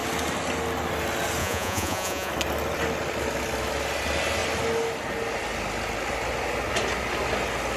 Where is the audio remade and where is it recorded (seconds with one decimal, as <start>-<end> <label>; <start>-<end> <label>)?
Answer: 0.0-1.4 recorded; 1.4-2.3 remade; 2.3-7.8 recorded